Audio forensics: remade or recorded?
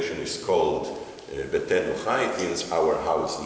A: remade